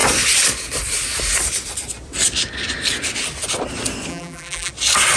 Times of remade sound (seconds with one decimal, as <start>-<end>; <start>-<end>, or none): 4.1-4.7